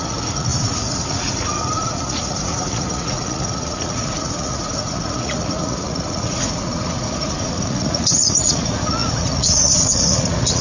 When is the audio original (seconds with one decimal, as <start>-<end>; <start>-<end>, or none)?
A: none